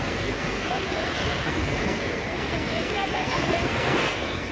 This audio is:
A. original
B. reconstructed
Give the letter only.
B